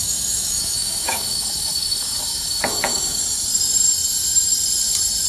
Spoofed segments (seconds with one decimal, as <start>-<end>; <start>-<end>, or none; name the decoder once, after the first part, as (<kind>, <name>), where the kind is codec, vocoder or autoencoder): 0.0-3.2 (autoencoder, DAC-VAE)